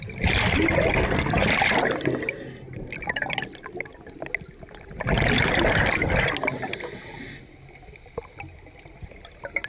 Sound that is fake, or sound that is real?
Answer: real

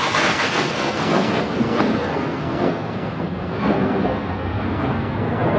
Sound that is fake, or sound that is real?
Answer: fake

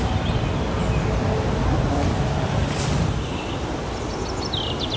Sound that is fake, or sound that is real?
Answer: real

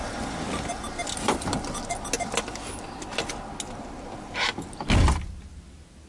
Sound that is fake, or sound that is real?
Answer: real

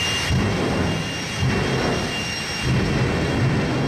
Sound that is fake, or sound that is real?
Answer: real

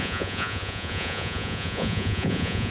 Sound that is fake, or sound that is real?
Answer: fake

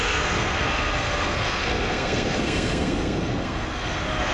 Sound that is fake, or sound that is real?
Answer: fake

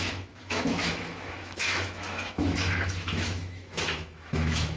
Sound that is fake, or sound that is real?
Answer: fake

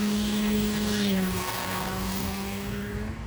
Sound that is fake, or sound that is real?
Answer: fake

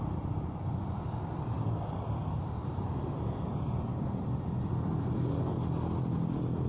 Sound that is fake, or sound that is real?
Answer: real